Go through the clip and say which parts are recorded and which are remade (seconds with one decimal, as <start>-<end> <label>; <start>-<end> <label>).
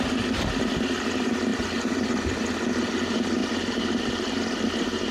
0.0-1.5 recorded; 1.5-2.1 remade; 2.1-3.4 recorded; 3.4-4.1 remade; 4.1-5.1 recorded